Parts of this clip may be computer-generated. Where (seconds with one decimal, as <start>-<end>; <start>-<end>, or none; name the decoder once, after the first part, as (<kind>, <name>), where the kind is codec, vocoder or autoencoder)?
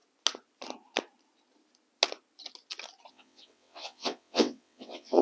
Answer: 3.1-5.2 (vocoder, WaveNeXt)